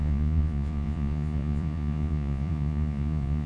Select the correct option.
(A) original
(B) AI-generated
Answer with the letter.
B